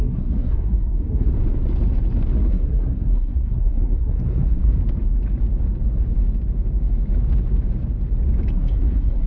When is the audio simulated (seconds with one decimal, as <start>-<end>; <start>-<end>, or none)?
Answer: 0.0-1.3; 2.5-4.8; 8.5-9.3